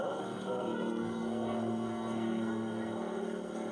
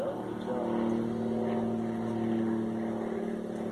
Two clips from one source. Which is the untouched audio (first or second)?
second